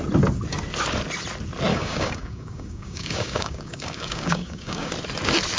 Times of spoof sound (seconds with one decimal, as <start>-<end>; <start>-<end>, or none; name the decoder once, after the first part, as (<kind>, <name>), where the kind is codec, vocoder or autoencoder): 1.7-4.9 (codec, DAC)